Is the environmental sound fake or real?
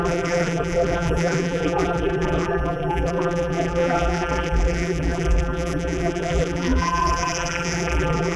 fake